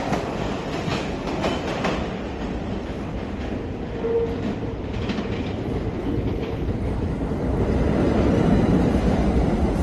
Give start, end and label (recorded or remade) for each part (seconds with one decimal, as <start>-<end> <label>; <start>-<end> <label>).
0.0-6.0 recorded; 6.0-6.7 remade; 6.7-9.8 recorded